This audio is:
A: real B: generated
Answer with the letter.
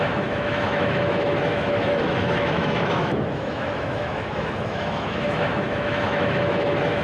B